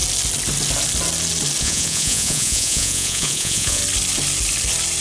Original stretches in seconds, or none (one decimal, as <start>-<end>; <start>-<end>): 0.0-1.6; 3.8-5.0